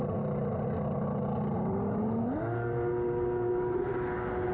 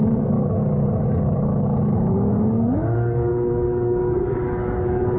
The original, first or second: first